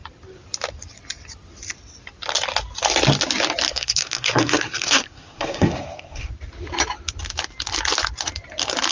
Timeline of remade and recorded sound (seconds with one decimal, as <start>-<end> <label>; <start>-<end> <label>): 0.0-3.7 recorded; 3.7-6.3 remade; 6.3-8.9 recorded